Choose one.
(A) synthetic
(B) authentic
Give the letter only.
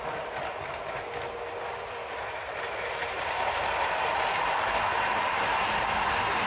B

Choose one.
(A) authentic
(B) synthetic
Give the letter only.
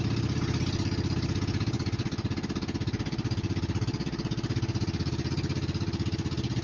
A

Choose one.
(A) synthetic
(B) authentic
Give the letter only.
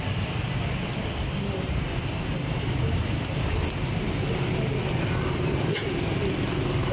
B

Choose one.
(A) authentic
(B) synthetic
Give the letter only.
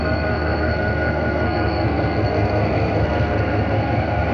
B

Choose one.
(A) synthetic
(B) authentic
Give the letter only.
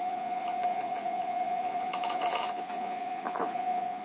A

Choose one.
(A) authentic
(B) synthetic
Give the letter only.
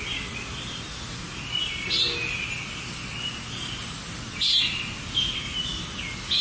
A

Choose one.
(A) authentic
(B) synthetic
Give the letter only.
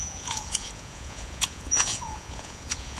B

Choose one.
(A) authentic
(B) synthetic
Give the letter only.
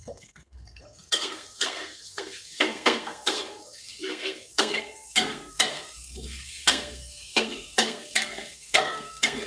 B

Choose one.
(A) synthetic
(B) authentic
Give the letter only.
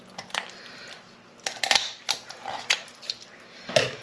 B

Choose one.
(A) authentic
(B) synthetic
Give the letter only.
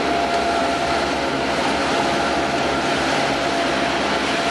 A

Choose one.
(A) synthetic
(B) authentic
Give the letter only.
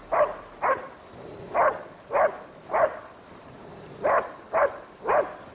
B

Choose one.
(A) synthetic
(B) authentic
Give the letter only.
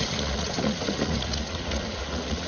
A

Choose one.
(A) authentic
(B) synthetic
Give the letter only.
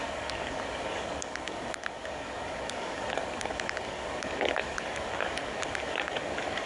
B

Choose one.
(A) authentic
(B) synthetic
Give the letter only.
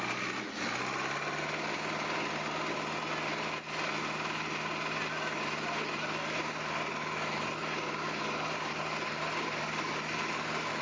A